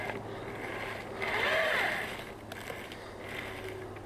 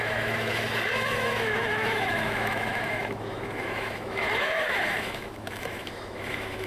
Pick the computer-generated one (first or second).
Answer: second